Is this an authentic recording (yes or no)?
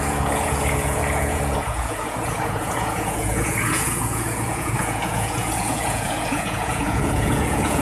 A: no